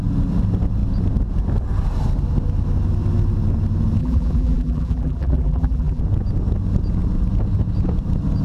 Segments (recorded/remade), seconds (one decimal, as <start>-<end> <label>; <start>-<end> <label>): 0.0-4.0 recorded; 4.0-6.0 remade; 6.0-8.4 recorded